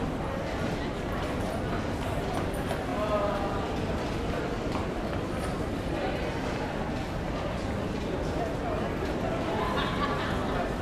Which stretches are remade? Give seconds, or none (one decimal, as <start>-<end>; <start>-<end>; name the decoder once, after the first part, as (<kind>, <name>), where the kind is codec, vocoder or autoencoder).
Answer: none